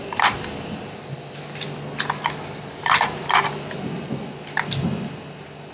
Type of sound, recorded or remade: recorded